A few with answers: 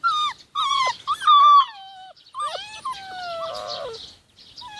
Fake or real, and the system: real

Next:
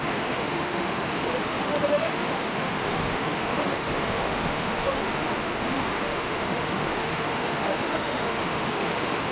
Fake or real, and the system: fake, autoencoder, DAC-VAE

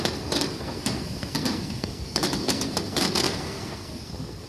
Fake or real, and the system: fake, codec, SNAC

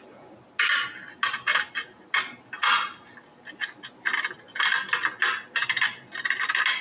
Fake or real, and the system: real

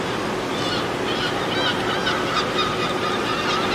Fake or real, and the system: real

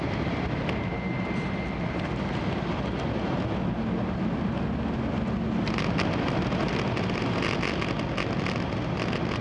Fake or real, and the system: real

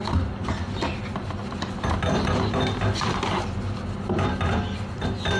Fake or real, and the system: real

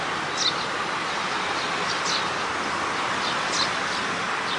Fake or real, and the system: real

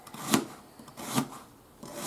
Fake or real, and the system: real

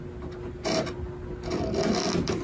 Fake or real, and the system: real